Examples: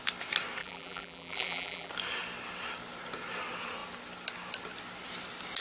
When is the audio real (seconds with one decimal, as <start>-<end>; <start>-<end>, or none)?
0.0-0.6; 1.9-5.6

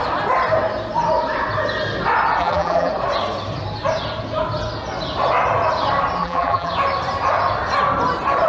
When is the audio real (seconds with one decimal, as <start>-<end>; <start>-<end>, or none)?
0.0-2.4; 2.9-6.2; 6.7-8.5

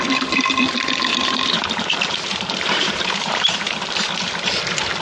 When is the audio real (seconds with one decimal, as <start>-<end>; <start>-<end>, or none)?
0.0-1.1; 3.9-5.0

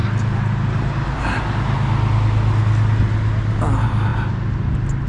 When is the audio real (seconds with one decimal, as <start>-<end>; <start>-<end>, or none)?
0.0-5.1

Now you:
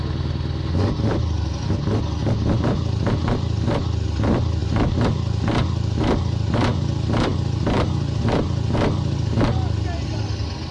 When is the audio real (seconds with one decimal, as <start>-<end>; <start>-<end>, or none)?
0.0-10.7